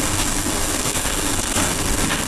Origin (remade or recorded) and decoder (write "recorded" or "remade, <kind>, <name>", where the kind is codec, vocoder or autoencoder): remade, codec, SNAC